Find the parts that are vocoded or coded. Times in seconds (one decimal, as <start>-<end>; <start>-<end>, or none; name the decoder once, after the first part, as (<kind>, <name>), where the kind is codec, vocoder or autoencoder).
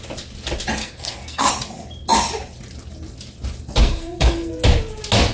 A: 0.8-1.5 (codec, SNAC); 3.8-4.5